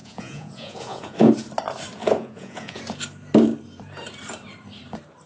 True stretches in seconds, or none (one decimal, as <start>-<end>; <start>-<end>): 1.3-2.0; 2.8-5.3